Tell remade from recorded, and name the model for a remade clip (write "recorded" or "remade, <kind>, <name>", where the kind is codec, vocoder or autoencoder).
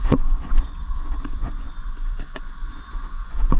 remade, vocoder, Vocos